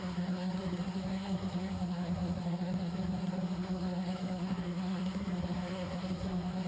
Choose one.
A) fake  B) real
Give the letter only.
A